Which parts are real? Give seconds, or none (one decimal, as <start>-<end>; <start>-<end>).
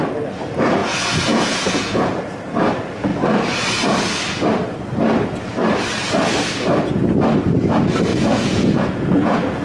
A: 0.0-0.8; 2.2-8.1